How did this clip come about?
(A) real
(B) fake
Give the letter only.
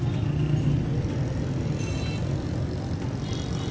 A